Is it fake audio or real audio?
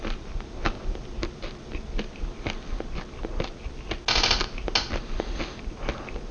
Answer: real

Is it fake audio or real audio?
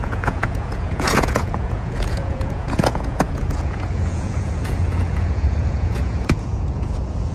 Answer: fake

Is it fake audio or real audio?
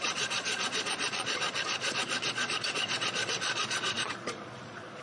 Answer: fake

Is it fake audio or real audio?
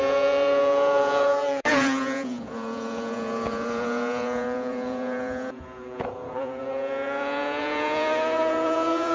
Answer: fake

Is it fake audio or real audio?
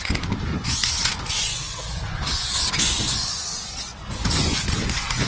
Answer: fake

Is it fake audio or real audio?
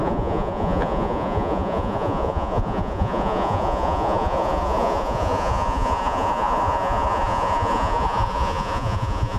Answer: fake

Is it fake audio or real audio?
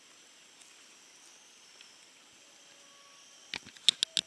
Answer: real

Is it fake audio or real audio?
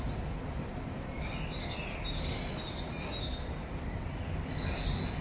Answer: real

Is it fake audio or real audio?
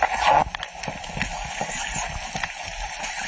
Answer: real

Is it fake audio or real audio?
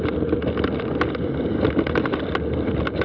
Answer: real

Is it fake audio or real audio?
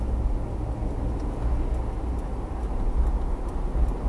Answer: real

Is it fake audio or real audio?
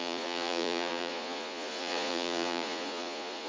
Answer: fake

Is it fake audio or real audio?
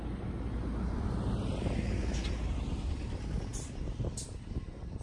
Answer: real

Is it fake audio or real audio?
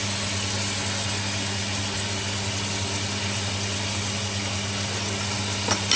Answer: real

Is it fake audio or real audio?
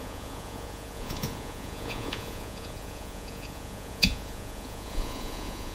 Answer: fake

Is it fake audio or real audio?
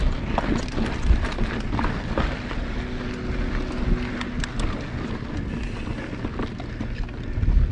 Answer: real